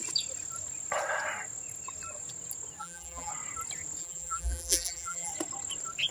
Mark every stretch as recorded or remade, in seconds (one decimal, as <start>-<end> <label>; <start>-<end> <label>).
0.0-2.8 recorded; 2.8-3.3 remade; 3.3-4.0 recorded; 4.0-5.3 remade; 5.3-6.1 recorded